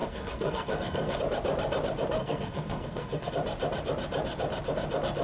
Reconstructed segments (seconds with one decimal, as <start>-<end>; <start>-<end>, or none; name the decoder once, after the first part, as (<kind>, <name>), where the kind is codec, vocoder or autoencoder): 0.0-1.2 (codec, SNAC); 2.2-3.3